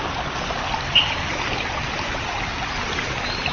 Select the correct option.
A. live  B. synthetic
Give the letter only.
A